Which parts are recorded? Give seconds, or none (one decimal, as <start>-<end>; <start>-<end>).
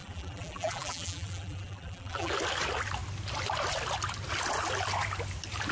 2.3-5.7